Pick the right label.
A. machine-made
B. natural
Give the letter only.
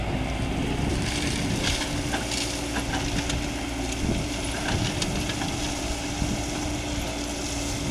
B